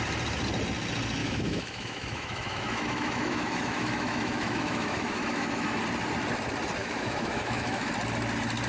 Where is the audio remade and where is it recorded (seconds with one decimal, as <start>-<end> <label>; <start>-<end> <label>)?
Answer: 0.0-1.2 recorded; 1.2-5.8 remade; 5.8-6.8 recorded; 6.8-7.9 remade; 7.9-8.7 recorded